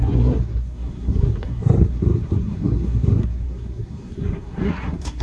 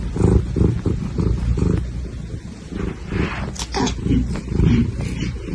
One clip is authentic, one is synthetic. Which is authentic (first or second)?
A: second